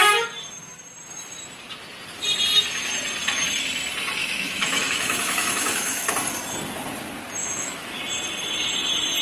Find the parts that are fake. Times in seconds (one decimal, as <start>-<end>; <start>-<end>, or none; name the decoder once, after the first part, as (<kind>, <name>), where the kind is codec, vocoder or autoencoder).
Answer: 4.2-6.1 (autoencoder, DAC-VAE); 7.4-8.0